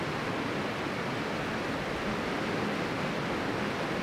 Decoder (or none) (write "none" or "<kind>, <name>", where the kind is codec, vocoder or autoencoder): none